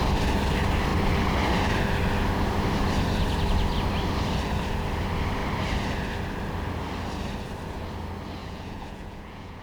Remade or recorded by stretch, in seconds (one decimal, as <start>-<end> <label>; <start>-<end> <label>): 0.0-8.4 recorded; 8.4-9.6 remade